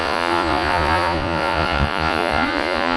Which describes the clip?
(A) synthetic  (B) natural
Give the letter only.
A